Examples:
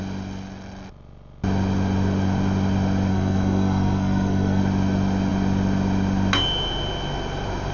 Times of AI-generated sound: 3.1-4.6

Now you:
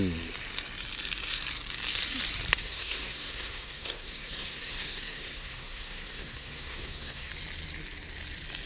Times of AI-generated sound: 2.6-7.3